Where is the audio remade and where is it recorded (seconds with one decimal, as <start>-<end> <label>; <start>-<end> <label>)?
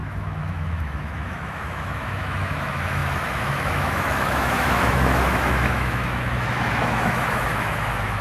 0.0-8.2 remade